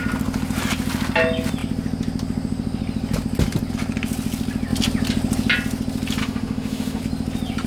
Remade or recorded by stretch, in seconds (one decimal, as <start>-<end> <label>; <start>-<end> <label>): 0.0-6.2 recorded; 6.2-7.0 remade; 7.0-7.7 recorded